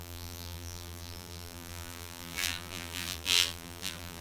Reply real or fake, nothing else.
fake